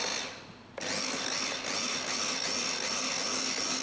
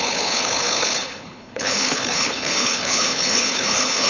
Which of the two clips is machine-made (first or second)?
second